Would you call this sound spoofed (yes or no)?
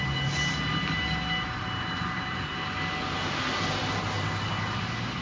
no